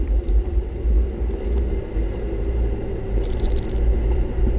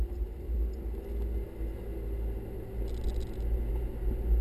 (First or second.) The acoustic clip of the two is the second